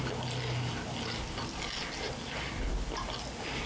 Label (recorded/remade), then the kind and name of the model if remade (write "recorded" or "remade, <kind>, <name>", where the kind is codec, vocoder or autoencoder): recorded